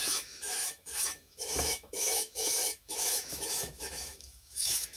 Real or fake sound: fake